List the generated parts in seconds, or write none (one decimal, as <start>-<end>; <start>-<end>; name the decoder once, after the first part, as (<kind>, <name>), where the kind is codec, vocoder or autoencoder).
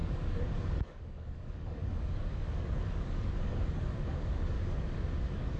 0.0-5.6 (codec, DAC)